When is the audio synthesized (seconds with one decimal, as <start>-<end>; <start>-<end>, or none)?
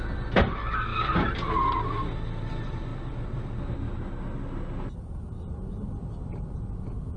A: none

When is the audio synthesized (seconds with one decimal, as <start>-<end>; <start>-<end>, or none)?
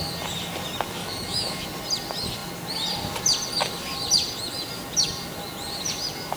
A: 1.0-1.6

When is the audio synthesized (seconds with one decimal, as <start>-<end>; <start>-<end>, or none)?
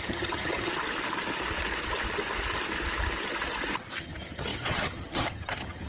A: 0.0-0.7; 4.0-5.9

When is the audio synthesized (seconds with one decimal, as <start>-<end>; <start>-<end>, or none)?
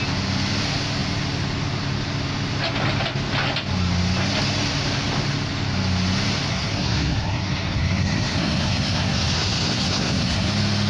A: 6.5-10.5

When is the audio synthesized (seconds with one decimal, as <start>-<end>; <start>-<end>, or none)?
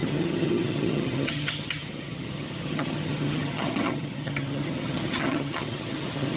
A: 0.0-6.4